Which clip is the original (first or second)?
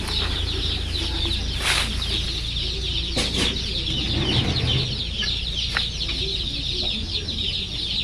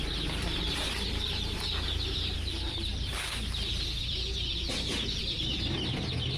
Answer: first